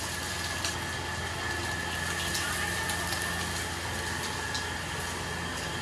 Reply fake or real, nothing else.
real